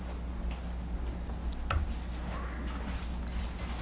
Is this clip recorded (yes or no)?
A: yes